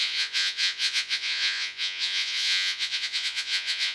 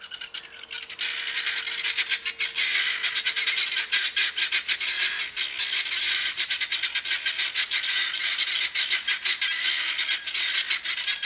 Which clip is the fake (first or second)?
first